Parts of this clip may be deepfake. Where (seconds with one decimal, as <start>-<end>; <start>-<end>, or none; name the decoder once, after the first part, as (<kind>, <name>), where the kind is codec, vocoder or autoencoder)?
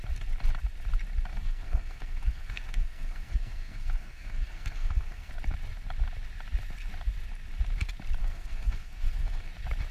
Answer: 1.3-5.3 (codec, SNAC); 8.2-9.5